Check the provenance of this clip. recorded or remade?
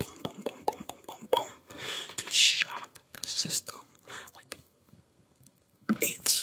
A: remade